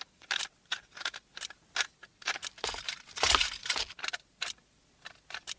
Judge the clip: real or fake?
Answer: real